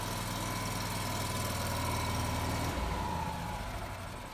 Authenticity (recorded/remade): recorded